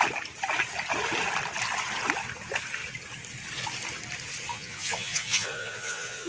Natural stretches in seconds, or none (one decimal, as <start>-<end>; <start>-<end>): 0.0-4.5